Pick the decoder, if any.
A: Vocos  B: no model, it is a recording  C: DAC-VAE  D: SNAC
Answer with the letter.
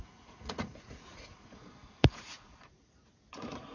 A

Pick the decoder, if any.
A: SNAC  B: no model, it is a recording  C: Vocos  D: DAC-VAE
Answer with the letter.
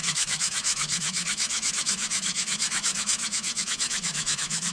D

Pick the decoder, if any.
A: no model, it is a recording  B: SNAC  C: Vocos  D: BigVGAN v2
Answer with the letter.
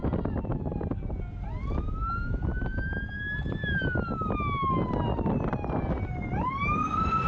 A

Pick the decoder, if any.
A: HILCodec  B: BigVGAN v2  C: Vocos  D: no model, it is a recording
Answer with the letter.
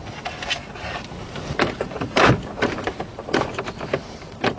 B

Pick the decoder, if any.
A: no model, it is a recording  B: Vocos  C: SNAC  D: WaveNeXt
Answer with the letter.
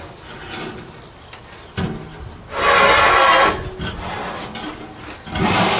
A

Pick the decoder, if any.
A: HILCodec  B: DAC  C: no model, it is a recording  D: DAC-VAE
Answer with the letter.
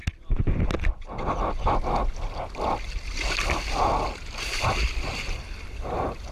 C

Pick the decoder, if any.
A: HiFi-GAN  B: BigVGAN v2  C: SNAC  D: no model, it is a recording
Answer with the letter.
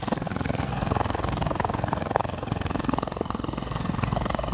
C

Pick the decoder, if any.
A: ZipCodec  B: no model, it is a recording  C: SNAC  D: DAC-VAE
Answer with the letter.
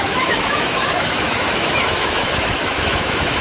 D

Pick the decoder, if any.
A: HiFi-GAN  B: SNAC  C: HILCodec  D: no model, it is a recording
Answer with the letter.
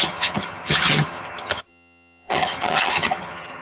A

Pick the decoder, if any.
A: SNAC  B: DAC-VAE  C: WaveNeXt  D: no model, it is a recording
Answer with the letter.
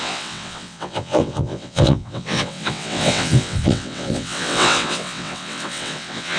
C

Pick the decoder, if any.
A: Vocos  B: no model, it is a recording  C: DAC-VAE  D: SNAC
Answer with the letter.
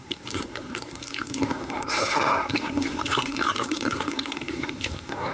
D